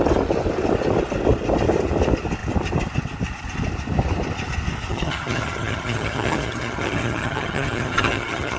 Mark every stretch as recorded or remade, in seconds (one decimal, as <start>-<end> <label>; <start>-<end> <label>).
0.0-4.9 recorded; 4.9-8.6 remade